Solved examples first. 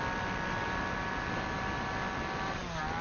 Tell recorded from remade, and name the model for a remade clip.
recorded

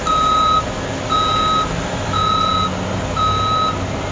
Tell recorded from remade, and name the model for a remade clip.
recorded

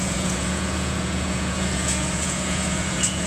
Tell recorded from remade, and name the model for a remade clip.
remade, vocoder, Vocos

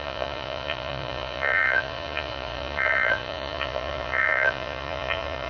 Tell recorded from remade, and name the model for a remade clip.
remade, vocoder, Vocos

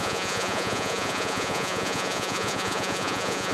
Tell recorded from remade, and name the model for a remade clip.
remade, vocoder, Vocos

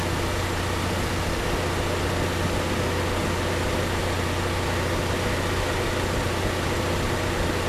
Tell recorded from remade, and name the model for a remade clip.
recorded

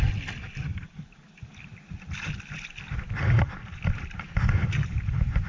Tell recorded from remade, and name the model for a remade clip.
recorded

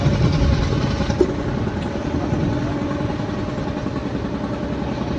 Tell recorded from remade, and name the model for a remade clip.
recorded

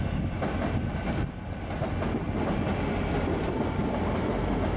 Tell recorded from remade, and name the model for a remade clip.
recorded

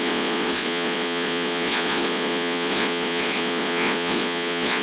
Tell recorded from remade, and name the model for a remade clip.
remade, vocoder, Vocos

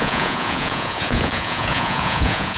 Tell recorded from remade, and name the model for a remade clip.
remade, vocoder, Vocos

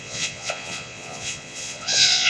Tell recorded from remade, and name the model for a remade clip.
remade, vocoder, Vocos